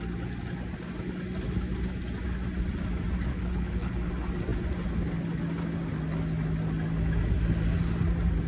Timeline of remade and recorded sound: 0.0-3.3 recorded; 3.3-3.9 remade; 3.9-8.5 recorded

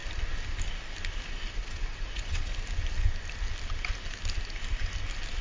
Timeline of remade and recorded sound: 0.0-1.5 recorded; 1.5-2.5 remade; 2.5-5.4 recorded

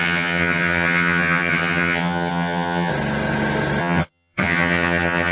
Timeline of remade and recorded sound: 0.0-2.9 remade; 2.9-3.8 recorded; 3.8-5.3 remade

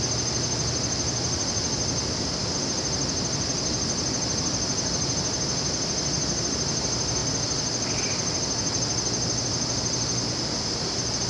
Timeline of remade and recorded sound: 0.0-11.3 recorded

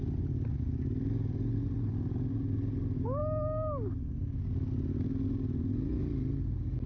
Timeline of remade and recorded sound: 0.0-6.9 recorded

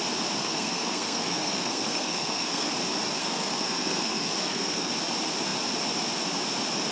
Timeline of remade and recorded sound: 0.0-0.4 recorded; 0.4-2.7 remade; 2.7-3.2 recorded; 3.2-4.9 remade; 4.9-6.9 recorded

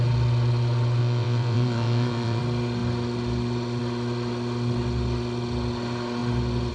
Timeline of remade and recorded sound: 0.0-1.0 recorded; 1.0-2.4 remade; 2.4-6.7 recorded

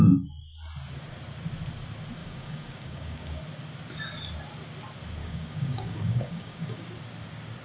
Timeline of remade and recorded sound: 0.0-2.2 recorded; 2.2-3.4 remade; 3.4-5.2 recorded; 5.2-6.9 remade; 6.9-7.6 recorded